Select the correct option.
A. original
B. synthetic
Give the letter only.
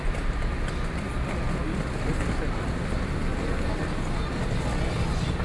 A